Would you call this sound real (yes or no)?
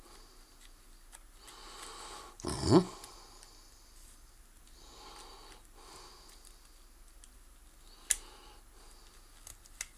yes